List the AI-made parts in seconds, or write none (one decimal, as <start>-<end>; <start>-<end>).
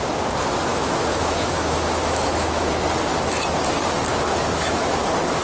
0.7-2.7; 4.1-5.0